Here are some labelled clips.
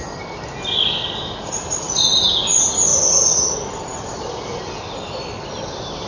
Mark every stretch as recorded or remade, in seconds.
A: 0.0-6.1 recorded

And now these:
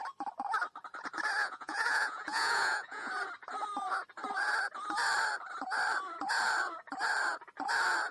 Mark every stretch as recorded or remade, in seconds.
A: 0.0-1.4 recorded; 1.4-3.1 remade; 3.1-8.1 recorded

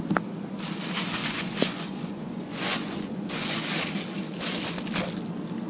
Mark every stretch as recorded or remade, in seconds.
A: 0.0-1.2 recorded; 1.2-3.6 remade; 3.6-5.7 recorded

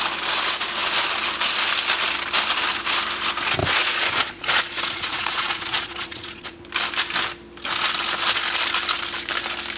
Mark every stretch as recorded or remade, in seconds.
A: 0.0-3.6 recorded; 3.6-6.6 remade; 6.6-9.8 recorded

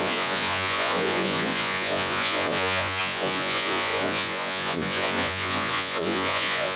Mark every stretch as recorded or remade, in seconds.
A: 0.0-6.8 remade

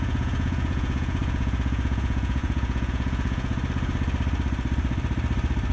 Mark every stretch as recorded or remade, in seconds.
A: 0.0-3.5 remade; 3.5-5.7 recorded

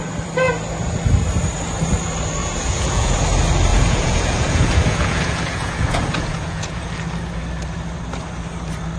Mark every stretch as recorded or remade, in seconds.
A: 0.0-2.4 recorded; 2.4-3.2 remade; 3.2-3.7 recorded; 3.7-6.9 remade; 6.9-9.0 recorded

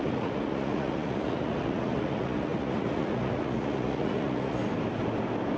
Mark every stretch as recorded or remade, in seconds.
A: 0.0-4.6 remade; 4.6-5.6 recorded